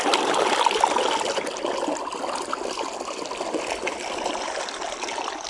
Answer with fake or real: real